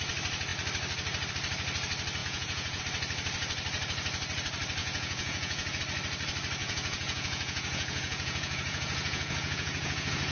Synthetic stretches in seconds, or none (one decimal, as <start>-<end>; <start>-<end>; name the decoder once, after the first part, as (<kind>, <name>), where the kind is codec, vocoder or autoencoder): 2.2-2.8 (vocoder, Vocos); 4.8-5.8; 6.6-10.3